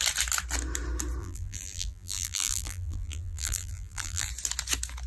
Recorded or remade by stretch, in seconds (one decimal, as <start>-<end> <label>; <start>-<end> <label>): 0.0-1.2 recorded; 1.2-4.3 remade; 4.3-5.1 recorded